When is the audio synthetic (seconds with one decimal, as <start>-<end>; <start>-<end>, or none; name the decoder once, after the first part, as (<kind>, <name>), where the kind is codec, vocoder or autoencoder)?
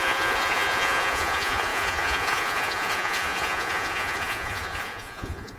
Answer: 0.0-5.6 (vocoder, Vocos)